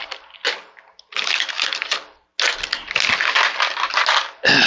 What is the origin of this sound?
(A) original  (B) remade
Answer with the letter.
A